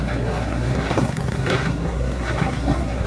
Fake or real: fake